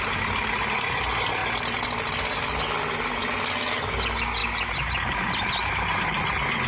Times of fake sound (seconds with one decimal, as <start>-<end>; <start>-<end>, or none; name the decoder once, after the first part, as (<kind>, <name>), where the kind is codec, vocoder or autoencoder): none